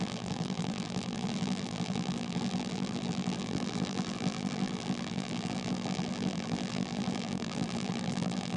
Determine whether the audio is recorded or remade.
remade